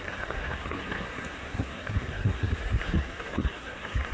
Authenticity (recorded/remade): remade